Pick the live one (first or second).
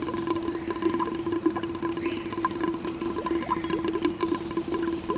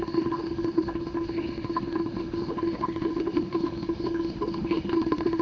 first